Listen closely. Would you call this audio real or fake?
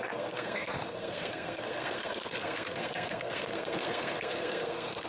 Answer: fake